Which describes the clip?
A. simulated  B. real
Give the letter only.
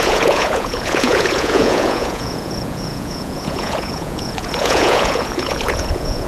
A